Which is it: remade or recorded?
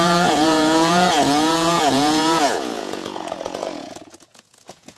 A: remade